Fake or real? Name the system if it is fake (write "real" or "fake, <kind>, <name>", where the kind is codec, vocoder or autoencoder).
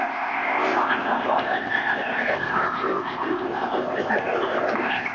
fake, codec, ZipCodec